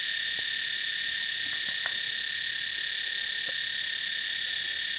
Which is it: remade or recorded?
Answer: recorded